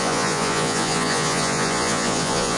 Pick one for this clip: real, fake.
fake